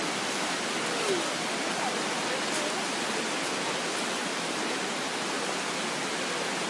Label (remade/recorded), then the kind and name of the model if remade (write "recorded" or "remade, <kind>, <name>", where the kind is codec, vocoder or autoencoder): recorded